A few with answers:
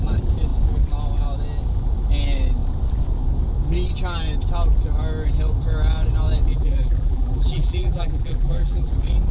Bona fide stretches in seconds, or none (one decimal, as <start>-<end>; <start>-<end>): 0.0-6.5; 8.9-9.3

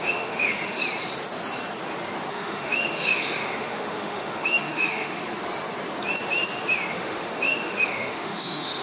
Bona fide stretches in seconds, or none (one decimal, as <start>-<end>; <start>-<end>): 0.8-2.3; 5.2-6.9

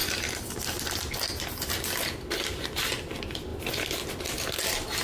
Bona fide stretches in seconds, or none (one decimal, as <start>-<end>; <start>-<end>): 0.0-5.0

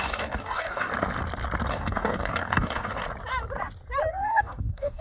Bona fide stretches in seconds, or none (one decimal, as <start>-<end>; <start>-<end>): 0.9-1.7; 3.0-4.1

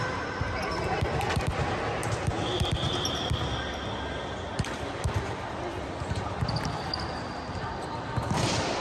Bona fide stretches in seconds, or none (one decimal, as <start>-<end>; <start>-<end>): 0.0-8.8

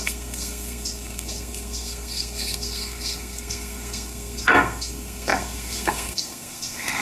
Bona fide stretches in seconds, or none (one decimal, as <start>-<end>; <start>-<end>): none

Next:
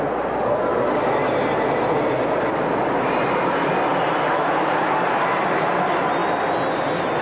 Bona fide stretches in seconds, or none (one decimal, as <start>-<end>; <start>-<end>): 0.0-7.2